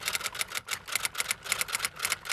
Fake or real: real